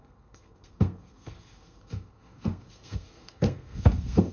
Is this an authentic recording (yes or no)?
no